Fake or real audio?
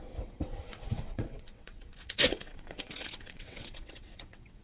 fake